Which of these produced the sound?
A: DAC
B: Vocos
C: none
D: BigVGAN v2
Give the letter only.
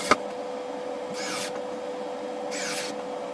C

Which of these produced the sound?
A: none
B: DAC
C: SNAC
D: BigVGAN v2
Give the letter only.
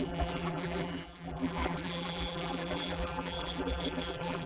D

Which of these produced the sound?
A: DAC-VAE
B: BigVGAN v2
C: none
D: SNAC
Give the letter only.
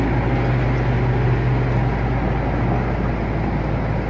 C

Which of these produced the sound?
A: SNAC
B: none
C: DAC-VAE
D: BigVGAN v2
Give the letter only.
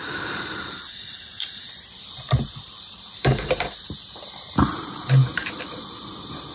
D